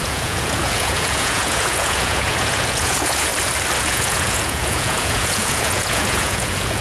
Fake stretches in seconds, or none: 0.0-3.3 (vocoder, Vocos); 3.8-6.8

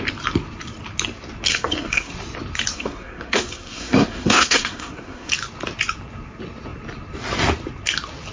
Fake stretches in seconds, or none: 1.5-2.1 (codec, SNAC); 2.7-5.3

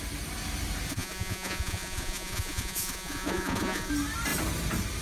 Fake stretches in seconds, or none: 0.9-3.9 (vocoder, Vocos)

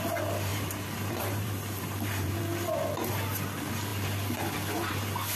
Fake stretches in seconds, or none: 0.5-2.4 (vocoder, BigVGAN v2)

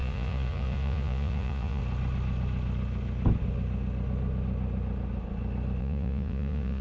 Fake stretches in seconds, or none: 0.0-1.8 (vocoder, Vocos); 5.8-6.8

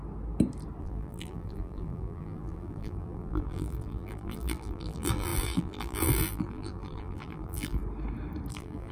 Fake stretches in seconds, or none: 0.8-7.8 (vocoder, BigVGAN v2); 8.5-8.9

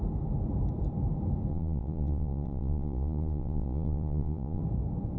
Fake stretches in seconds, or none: 1.5-4.6 (vocoder, Vocos)